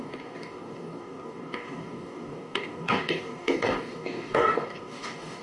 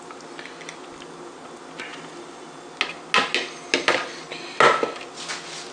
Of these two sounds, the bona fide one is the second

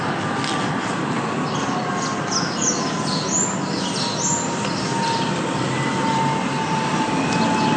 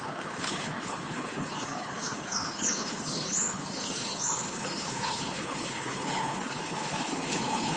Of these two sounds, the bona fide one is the first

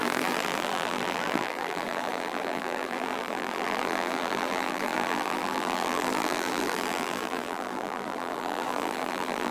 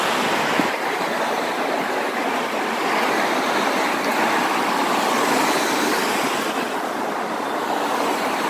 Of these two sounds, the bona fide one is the second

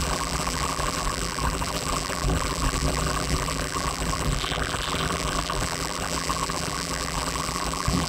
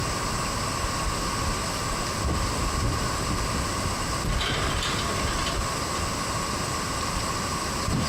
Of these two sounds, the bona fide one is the second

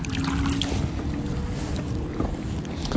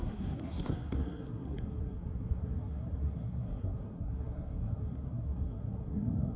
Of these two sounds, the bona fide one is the first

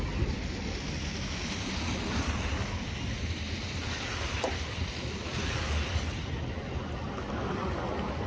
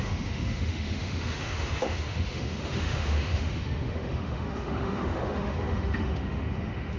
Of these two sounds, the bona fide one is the first